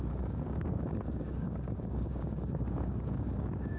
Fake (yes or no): yes